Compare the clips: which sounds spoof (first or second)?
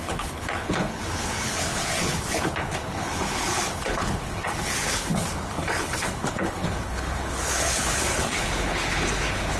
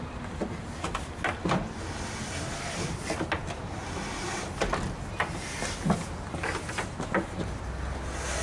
first